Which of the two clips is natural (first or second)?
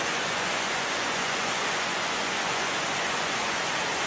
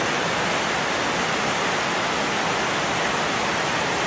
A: second